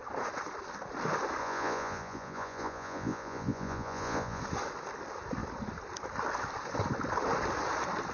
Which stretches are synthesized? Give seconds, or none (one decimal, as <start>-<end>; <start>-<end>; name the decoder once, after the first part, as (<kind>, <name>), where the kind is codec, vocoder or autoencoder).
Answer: 1.4-4.4 (vocoder, Vocos)